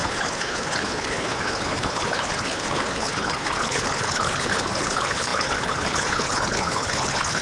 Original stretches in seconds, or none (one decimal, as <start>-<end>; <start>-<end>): none